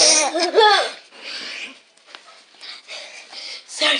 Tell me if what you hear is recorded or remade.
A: recorded